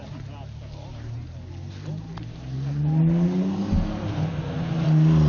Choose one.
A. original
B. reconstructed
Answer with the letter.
A